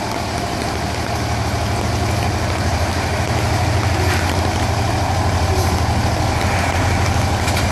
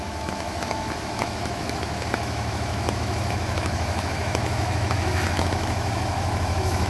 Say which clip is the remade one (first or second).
second